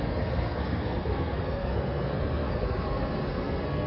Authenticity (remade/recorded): remade